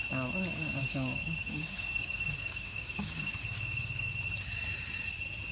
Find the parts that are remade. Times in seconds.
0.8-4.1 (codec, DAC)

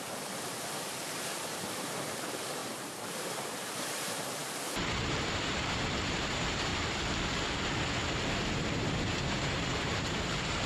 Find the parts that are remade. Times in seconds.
0.0-6.7 (vocoder, BigVGAN v2); 8.5-10.7

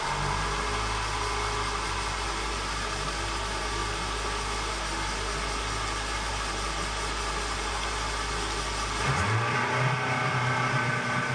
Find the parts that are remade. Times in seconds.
none

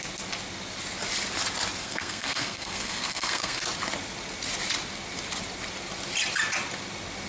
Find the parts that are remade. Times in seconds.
1.8-3.6 (codec, SNAC)

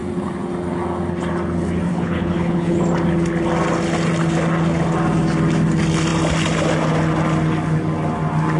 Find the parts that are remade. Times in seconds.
1.9-2.8 (codec, HILCodec)

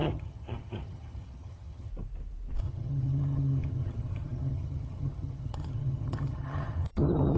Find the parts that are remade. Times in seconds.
0.0-1.9 (vocoder, HiFi-GAN); 2.6-7.4